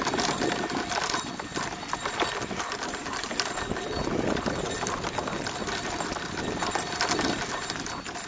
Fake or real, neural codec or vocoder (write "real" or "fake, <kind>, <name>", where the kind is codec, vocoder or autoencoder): real